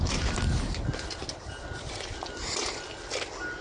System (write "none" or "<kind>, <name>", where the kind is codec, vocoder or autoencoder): none